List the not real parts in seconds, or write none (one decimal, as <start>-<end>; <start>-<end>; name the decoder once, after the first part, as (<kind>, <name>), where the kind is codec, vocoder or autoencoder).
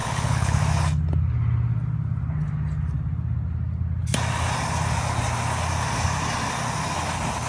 0.0-0.6 (codec, HILCodec)